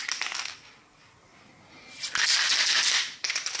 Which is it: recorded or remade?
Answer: recorded